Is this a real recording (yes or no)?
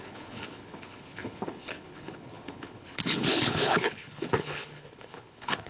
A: no